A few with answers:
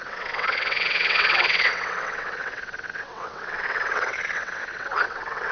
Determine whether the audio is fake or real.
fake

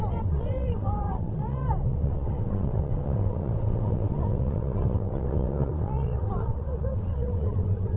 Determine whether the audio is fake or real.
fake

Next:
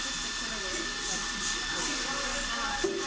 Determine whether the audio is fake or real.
real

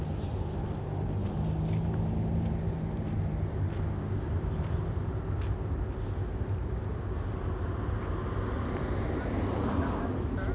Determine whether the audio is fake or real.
real